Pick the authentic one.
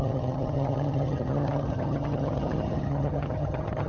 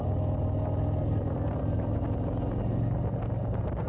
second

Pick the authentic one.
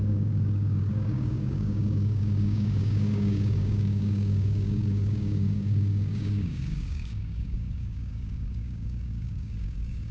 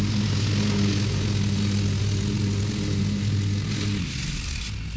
second